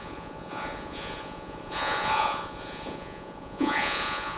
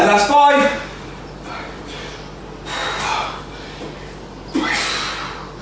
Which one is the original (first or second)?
second